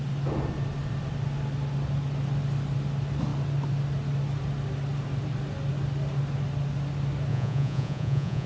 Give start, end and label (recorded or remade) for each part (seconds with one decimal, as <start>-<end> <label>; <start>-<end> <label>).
0.0-7.3 recorded; 7.3-8.5 remade